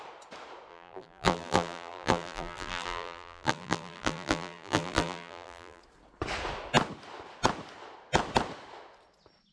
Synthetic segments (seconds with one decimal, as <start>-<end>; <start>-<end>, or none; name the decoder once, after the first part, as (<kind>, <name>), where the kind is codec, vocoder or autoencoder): 0.7-5.8 (vocoder, BigVGAN v2)